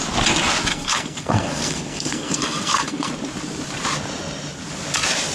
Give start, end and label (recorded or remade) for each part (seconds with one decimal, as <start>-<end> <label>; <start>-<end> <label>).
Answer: 0.0-0.7 recorded; 0.7-3.1 remade; 3.1-5.3 recorded